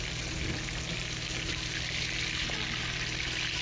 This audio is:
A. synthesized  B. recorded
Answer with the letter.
B